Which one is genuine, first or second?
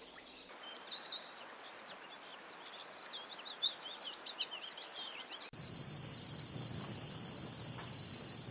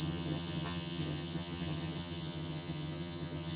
first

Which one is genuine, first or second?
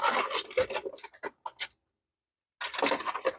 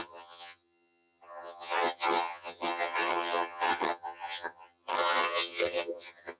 first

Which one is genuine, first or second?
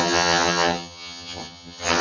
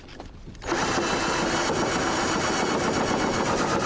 second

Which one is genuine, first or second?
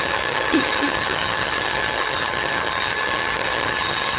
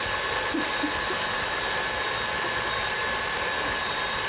second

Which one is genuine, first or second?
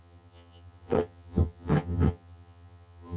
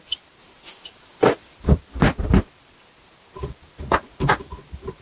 second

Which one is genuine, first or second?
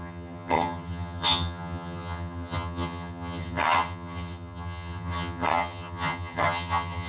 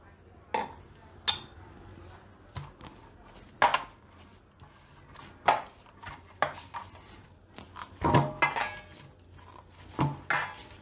second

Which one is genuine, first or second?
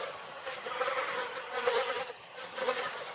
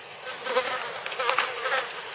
second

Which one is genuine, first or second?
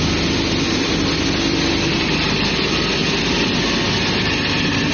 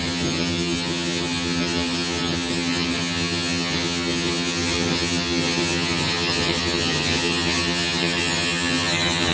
first